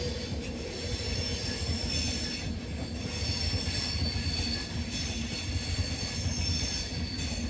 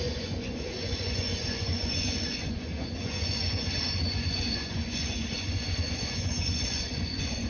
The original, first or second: first